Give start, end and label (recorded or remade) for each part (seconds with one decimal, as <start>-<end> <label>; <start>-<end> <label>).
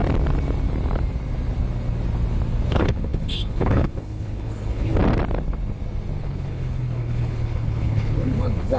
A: 0.0-2.7 recorded; 2.7-4.9 remade; 4.9-6.2 recorded; 6.2-8.8 remade